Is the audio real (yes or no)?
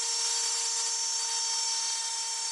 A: yes